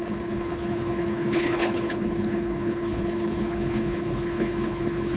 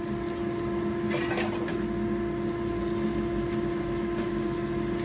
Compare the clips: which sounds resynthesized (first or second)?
first